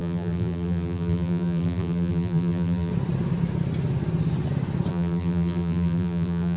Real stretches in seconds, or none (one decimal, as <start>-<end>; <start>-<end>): 2.9-4.9